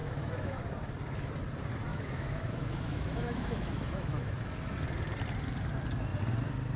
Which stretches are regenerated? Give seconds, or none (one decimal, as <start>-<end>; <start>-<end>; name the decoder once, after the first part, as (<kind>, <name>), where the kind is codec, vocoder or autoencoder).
0.0-0.6 (autoencoder, DAC-VAE); 1.9-4.4